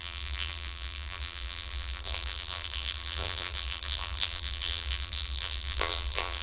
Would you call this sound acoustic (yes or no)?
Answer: no